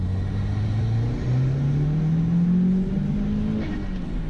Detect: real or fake real